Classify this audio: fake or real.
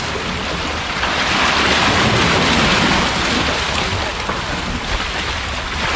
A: real